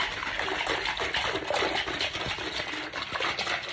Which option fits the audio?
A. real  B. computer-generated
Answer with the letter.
A